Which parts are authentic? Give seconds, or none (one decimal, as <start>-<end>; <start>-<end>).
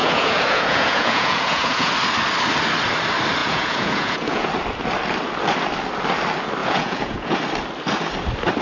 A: 1.9-3.4; 4.5-6.6; 7.4-8.6